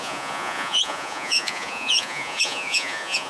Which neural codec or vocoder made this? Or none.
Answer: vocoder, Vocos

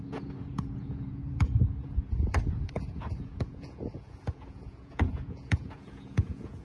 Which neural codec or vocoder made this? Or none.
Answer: vocoder, Vocos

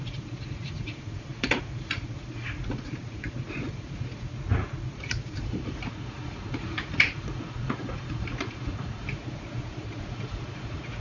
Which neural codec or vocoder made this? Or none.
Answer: vocoder, Vocos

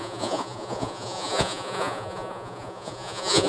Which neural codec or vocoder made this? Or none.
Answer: vocoder, Vocos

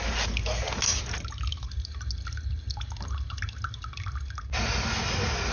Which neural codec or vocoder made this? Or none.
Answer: none